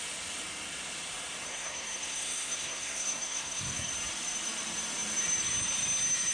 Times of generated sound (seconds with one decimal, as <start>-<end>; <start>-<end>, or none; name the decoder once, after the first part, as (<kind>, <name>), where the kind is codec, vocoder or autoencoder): 1.5-3.9 (codec, SNAC)